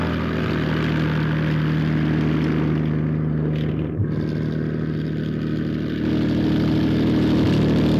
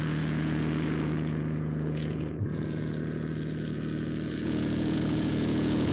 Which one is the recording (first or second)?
first